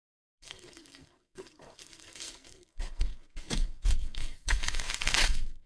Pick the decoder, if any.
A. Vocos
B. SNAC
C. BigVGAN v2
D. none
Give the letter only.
B